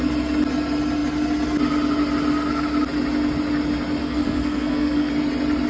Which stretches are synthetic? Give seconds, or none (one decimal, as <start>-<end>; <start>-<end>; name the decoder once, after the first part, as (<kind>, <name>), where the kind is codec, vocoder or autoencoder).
4.0-5.1 (codec, SNAC)